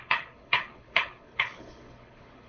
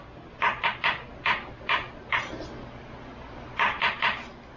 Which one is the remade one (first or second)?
first